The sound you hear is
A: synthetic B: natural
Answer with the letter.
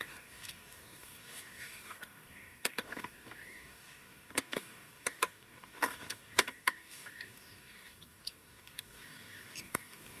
A